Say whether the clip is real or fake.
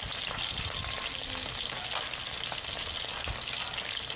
real